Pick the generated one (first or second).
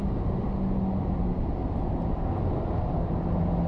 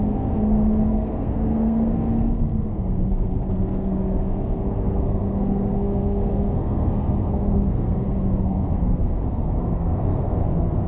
second